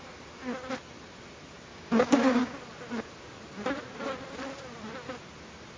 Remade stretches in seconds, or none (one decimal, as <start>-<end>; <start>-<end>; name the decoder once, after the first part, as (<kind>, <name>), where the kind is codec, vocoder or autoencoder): 1.7-2.6 (codec, DAC)